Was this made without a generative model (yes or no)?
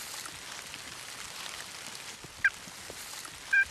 yes